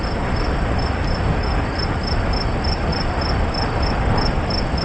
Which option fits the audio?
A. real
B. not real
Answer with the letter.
A